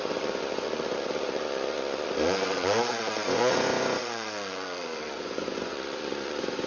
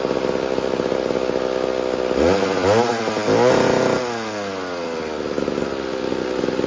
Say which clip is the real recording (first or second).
second